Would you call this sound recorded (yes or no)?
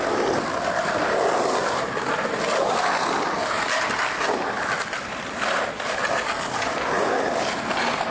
yes